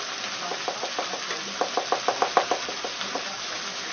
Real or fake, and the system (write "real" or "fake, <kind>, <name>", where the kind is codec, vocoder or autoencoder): real